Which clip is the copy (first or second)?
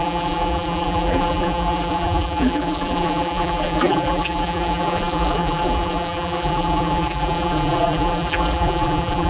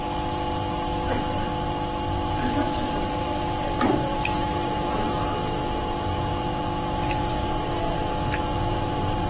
first